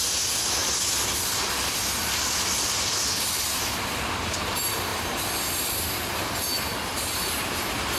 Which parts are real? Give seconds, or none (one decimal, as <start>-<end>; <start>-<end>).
0.0-8.0

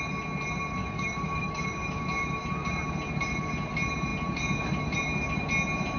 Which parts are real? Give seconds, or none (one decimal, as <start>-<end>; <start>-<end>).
0.0-0.8; 2.0-6.0

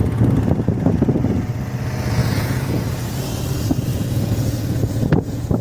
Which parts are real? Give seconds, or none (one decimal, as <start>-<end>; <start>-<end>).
0.0-2.2; 2.8-3.9

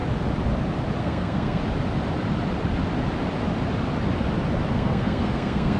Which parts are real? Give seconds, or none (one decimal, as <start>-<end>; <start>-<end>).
0.0-1.0; 1.6-4.7

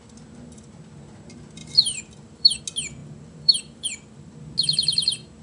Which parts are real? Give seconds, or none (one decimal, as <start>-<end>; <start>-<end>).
0.0-1.6; 2.6-3.0; 4.4-5.4